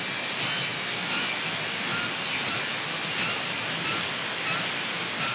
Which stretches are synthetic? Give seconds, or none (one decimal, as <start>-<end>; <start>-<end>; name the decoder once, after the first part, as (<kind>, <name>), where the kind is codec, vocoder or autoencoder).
none

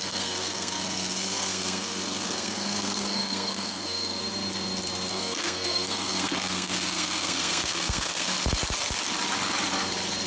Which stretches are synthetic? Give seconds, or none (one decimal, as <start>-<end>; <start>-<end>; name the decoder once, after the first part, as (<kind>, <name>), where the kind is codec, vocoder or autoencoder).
0.0-4.2 (codec, SNAC); 5.1-8.3

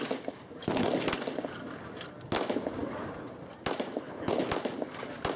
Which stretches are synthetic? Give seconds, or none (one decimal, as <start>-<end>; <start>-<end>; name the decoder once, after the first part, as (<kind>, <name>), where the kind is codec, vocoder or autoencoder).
none

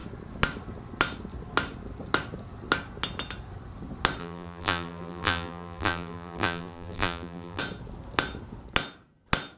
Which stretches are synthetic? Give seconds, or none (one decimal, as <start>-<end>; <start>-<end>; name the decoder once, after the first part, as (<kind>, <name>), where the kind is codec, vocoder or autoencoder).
4.2-7.6 (vocoder, BigVGAN v2)

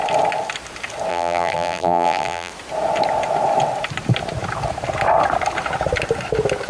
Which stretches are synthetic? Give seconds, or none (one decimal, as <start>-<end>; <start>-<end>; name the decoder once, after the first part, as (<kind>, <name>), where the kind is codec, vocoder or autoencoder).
1.1-2.5 (vocoder, BigVGAN v2)

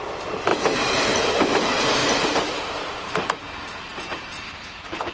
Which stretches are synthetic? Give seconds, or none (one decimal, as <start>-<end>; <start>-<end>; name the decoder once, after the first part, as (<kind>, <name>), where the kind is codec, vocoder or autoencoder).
2.0-3.4 (vocoder, BigVGAN v2)

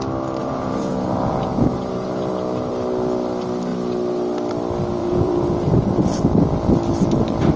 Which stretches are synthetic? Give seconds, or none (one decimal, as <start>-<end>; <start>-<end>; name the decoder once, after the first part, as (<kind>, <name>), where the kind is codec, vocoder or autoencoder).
0.4-2.7 (vocoder, Vocos); 5.0-6.2

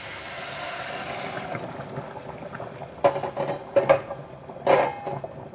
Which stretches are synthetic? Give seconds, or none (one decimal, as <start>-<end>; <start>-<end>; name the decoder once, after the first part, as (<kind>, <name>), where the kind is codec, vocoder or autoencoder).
none